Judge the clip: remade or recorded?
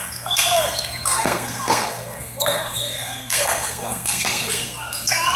remade